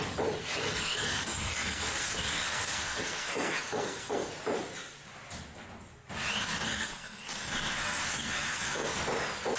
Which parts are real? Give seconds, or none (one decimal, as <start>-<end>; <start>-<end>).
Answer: 0.0-0.4; 4.3-6.5; 8.9-9.6